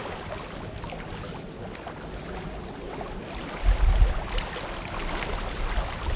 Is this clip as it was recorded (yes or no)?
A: yes